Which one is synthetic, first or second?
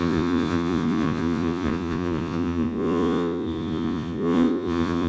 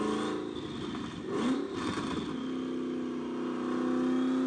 first